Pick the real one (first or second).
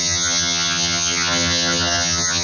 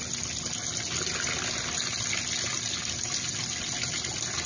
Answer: second